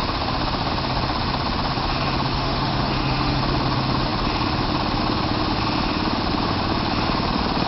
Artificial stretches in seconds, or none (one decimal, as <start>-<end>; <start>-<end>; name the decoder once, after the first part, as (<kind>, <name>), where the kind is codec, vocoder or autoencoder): 2.3-3.4 (autoencoder, DAC-VAE)